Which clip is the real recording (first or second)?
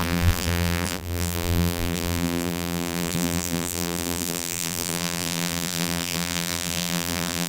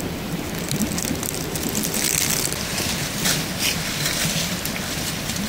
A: second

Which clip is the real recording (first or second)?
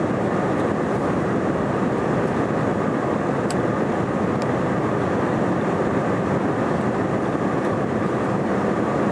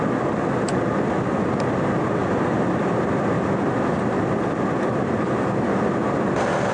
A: second